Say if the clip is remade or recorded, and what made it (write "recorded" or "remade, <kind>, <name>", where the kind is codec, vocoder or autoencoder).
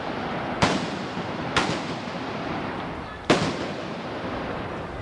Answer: remade, vocoder, BigVGAN v2